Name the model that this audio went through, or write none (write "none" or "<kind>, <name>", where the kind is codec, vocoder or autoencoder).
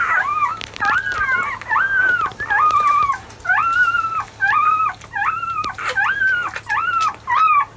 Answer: none